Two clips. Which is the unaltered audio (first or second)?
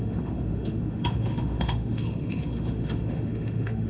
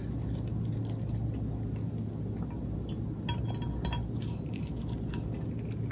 second